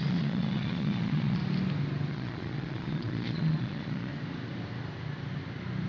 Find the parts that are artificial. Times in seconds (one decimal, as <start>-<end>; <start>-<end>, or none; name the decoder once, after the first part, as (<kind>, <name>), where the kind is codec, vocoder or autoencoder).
0.0-1.4 (vocoder, Vocos); 2.1-4.1